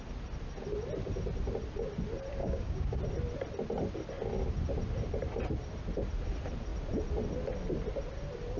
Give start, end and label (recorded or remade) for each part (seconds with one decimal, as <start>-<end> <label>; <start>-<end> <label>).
0.0-2.4 recorded; 2.4-3.0 remade; 3.0-8.6 recorded